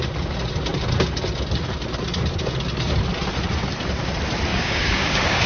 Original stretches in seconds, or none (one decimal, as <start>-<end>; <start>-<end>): 0.0-4.5

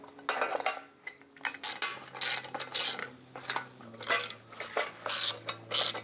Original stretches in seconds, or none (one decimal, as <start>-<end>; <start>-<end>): 0.0-0.7; 1.4-3.0; 5.3-6.0

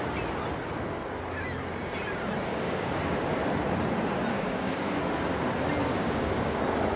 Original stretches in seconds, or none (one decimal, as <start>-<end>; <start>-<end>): 0.0-2.5; 3.2-4.3; 5.0-5.8; 6.6-7.0

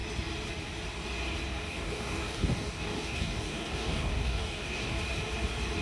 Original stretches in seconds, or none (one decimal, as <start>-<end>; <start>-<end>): 0.0-1.7; 5.0-5.8

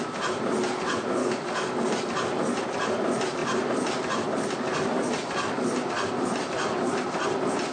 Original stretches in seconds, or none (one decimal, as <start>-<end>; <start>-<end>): 0.0-1.2; 1.9-7.7